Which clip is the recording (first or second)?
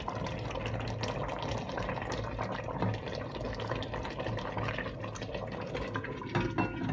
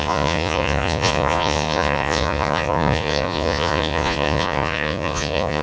first